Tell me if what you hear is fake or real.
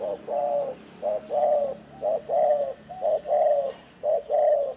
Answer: real